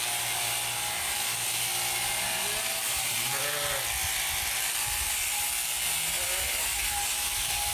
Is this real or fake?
real